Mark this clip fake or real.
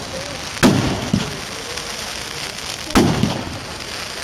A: real